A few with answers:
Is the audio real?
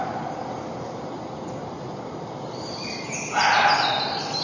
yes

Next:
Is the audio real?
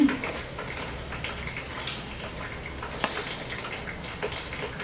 yes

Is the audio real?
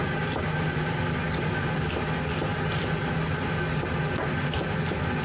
no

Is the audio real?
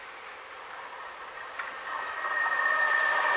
yes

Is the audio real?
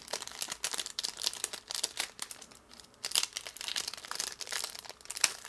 no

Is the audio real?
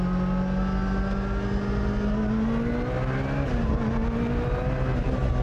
yes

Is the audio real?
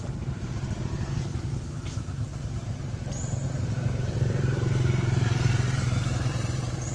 no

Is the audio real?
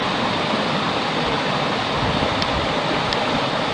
no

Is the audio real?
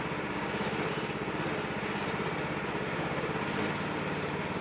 yes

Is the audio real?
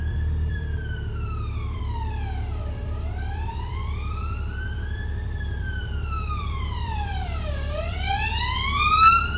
no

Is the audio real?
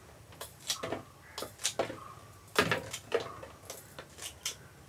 yes